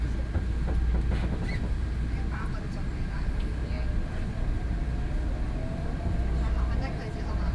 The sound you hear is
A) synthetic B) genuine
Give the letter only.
B